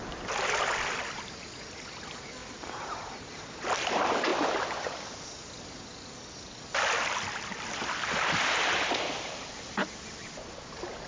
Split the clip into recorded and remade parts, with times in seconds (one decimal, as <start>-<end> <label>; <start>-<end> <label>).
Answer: 0.0-2.4 recorded; 2.4-3.9 remade; 3.9-11.1 recorded